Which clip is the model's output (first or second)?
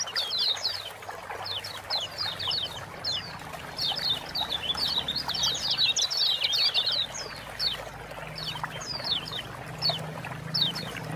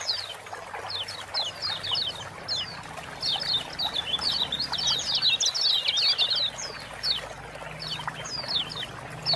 first